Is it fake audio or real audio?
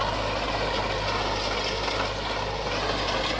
real